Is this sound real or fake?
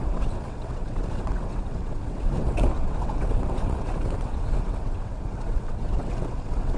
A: fake